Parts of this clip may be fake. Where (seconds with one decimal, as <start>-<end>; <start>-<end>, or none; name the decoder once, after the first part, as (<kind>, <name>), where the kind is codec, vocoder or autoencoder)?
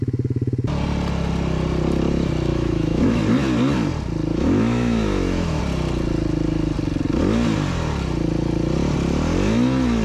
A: 2.5-3.2 (autoencoder, DAC-VAE); 4.3-5.6